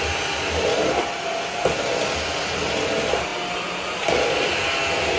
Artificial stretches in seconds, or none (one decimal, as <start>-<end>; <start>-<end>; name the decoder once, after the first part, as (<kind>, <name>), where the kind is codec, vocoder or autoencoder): none